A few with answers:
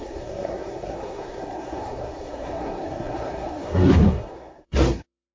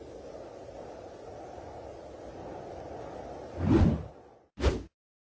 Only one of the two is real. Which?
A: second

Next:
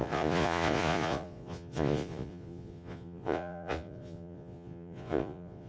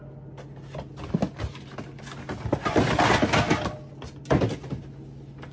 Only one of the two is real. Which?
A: second